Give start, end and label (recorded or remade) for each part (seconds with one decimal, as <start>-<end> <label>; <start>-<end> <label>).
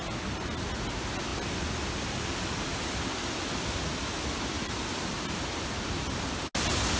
0.0-7.0 recorded